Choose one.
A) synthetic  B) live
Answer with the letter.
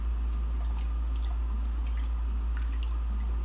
B